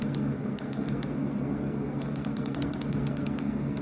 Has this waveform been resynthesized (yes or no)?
yes